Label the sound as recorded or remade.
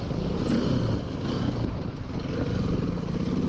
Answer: recorded